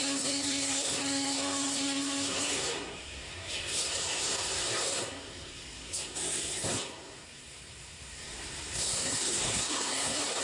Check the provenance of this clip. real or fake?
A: fake